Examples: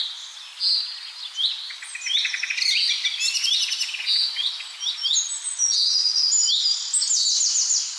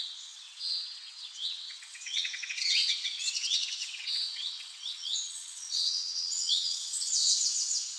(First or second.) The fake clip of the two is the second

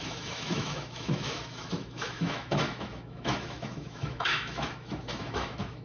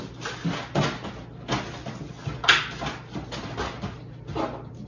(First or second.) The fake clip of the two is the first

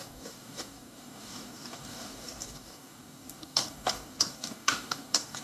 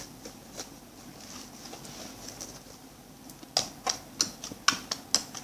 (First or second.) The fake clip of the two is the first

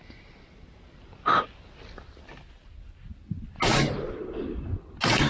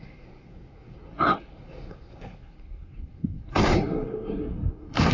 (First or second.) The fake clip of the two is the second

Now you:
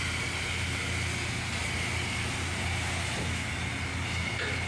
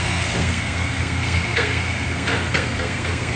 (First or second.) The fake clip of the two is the second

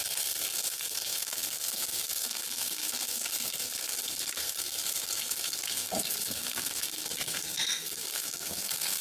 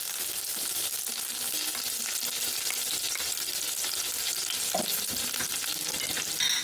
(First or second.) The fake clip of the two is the first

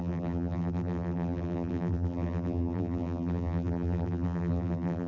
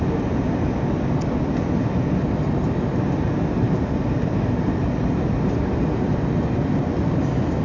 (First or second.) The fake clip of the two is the first